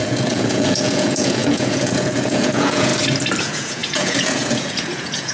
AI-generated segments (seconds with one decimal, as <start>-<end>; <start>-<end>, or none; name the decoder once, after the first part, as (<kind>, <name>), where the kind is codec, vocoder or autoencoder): 0.0-2.9 (vocoder, Vocos); 3.4-5.3